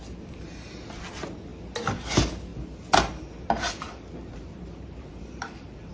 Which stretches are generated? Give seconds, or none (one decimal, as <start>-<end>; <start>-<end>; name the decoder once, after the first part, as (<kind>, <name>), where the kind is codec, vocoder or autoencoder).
4.3-5.9 (vocoder, BigVGAN v2)